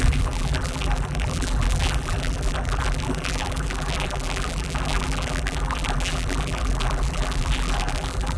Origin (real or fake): fake